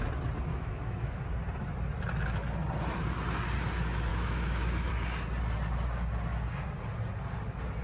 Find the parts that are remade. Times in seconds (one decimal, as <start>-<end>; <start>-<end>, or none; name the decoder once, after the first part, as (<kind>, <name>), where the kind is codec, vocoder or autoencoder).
0.5-1.2 (autoencoder, DAC-VAE); 4.1-4.9